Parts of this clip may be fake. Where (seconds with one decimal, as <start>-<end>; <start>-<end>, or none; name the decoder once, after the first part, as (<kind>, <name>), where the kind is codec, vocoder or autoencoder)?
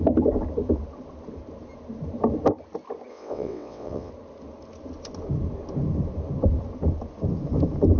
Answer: 3.1-4.1 (vocoder, WaveNeXt)